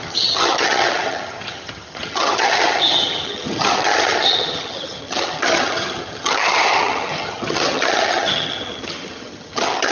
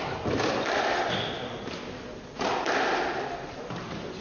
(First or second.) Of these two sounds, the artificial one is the first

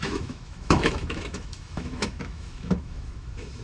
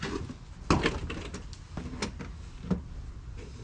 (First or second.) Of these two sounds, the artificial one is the first